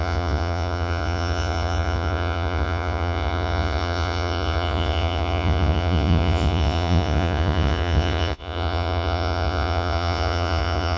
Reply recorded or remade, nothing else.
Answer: remade